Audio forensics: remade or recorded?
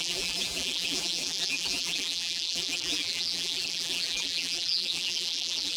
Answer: remade